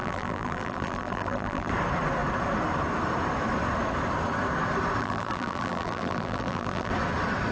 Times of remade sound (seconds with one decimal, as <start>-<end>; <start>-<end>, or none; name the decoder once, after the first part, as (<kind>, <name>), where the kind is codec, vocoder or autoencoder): 0.0-1.7 (vocoder, BigVGAN v2); 5.0-6.9